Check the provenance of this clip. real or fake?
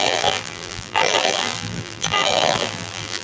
fake